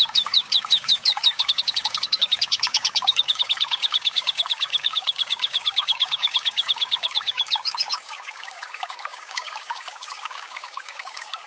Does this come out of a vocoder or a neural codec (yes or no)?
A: yes